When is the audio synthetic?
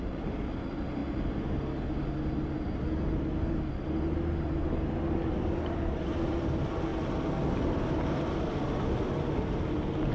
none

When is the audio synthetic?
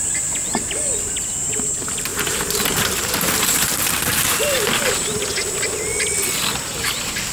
2.1-4.7 (vocoder, BigVGAN v2)